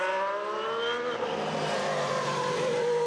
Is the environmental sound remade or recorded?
recorded